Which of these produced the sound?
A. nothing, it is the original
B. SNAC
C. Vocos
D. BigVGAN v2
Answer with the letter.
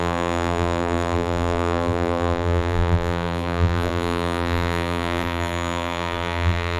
D